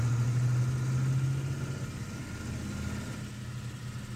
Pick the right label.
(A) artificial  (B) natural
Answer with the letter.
B